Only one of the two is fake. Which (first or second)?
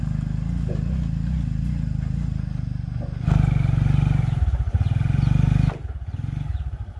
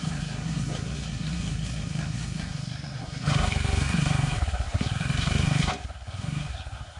second